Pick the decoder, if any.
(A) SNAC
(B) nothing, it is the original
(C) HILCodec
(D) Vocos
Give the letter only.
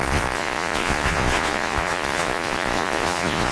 D